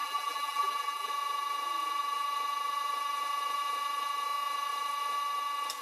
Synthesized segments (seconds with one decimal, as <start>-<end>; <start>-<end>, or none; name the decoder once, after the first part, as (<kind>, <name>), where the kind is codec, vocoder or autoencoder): 0.0-1.1 (vocoder, BigVGAN v2)